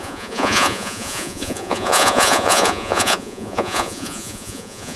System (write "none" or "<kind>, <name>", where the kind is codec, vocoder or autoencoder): vocoder, Vocos